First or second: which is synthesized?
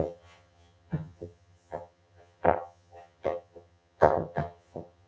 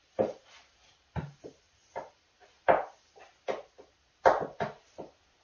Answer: first